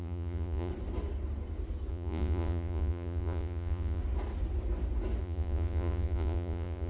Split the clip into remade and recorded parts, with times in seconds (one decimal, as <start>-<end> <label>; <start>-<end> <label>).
0.0-0.7 remade; 0.7-1.9 recorded; 1.9-4.0 remade; 4.0-5.2 recorded; 5.2-6.9 remade